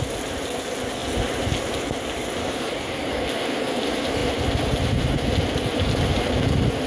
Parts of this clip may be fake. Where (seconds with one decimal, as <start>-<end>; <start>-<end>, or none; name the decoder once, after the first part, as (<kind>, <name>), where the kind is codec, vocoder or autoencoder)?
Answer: 2.4-3.2 (codec, DAC)